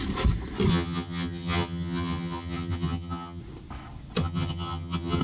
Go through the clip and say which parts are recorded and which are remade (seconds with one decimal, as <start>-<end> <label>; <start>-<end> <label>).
0.0-0.7 recorded; 0.7-3.4 remade; 3.4-4.2 recorded; 4.2-5.2 remade